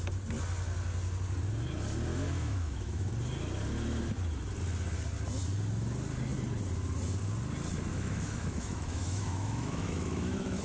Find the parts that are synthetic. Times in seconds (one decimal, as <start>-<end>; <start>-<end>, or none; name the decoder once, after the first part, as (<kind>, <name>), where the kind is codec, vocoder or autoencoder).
2.1-3.1 (autoencoder, DAC-VAE); 7.9-10.6